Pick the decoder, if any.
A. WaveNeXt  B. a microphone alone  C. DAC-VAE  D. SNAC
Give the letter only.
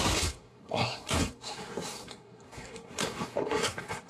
D